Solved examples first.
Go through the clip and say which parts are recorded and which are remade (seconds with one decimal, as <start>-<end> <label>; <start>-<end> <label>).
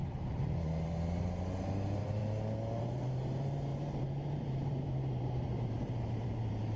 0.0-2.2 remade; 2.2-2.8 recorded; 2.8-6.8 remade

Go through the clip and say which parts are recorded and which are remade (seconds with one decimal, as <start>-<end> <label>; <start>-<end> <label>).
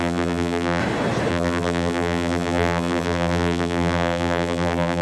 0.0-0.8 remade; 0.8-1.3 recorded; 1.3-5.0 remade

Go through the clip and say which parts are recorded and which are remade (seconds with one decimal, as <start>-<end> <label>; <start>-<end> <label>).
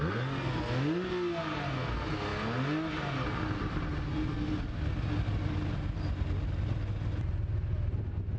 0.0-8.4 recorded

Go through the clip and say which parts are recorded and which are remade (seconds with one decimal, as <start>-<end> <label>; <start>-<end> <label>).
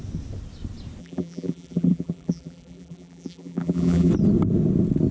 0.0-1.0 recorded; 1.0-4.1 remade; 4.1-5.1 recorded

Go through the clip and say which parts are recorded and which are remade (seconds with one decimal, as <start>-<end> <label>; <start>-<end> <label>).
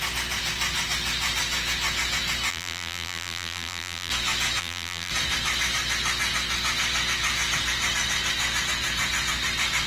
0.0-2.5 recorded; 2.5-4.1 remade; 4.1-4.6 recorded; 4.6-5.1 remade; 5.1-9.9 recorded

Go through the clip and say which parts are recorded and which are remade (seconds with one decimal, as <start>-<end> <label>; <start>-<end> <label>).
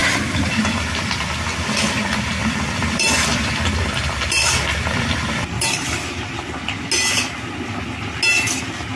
0.0-0.6 remade; 0.6-2.4 recorded; 2.4-6.8 remade; 6.8-9.0 recorded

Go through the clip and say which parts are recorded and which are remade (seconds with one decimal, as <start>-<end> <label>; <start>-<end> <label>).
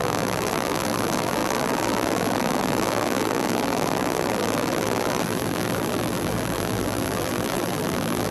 0.0-8.3 remade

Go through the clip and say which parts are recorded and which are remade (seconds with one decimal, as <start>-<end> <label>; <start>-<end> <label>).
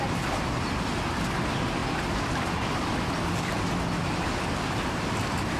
0.0-1.8 recorded; 1.8-3.6 remade; 3.6-5.6 recorded